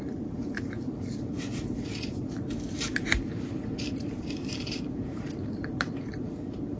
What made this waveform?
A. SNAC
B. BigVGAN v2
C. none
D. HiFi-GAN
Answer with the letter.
B